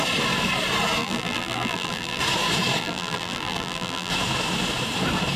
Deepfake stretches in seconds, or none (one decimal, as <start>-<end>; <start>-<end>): 1.0-2.2; 2.8-4.1